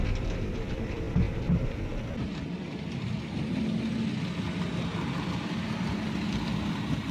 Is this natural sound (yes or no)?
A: yes